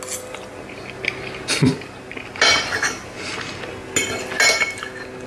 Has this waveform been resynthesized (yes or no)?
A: no